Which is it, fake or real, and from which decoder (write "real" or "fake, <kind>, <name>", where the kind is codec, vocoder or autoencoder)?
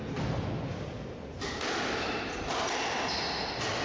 real